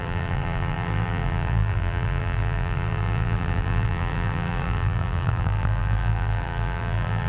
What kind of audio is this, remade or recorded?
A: remade